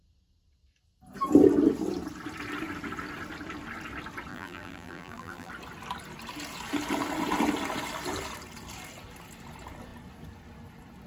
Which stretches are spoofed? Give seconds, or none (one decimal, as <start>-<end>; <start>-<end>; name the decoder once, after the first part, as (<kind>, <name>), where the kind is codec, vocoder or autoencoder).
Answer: 4.3-5.5 (vocoder, BigVGAN v2)